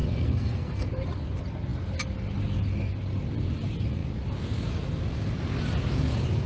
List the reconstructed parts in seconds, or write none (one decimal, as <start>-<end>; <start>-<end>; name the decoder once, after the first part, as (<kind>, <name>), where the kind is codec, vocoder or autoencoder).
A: 0.0-0.9 (codec, SNAC)